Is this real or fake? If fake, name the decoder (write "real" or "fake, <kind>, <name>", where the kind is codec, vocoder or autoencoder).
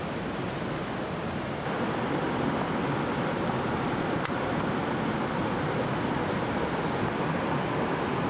real